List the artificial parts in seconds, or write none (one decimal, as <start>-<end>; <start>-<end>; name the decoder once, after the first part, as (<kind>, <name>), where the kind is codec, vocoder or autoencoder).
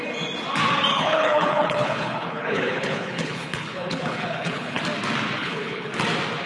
0.9-4.8 (codec, HILCodec); 5.4-5.9